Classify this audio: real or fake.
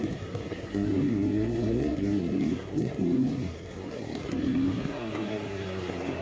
fake